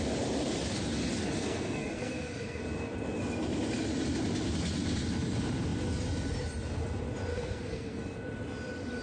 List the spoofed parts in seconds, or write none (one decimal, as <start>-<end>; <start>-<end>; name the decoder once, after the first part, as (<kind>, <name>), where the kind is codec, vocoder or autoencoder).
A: 1.4-2.6 (codec, SNAC); 7.3-8.0